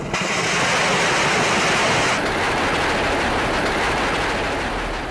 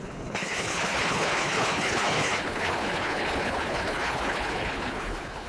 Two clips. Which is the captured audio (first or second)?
first